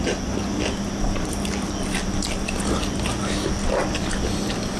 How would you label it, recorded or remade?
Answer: recorded